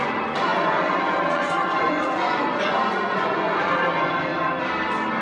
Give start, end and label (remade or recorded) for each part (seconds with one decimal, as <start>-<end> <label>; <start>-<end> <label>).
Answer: 0.0-4.3 remade; 4.3-5.2 recorded